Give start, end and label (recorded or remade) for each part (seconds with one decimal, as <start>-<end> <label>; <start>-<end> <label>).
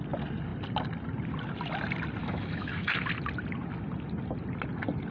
0.0-2.2 recorded; 2.2-3.0 remade; 3.0-5.1 recorded